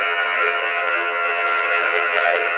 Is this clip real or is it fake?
fake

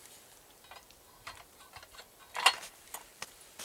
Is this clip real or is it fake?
real